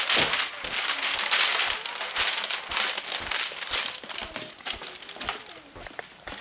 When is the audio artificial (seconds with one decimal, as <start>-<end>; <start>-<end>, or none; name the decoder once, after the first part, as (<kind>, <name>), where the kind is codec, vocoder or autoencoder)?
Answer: none

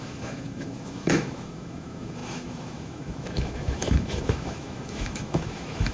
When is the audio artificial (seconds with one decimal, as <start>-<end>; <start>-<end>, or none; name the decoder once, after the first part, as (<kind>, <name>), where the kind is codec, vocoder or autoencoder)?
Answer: 0.0-5.9 (autoencoder, DAC-VAE)

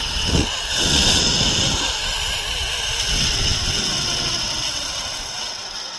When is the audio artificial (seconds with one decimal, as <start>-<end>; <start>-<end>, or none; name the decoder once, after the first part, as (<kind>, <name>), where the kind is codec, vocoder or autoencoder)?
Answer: 0.0-1.2 (vocoder, WaveNeXt); 3.0-6.0